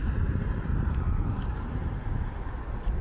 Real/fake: real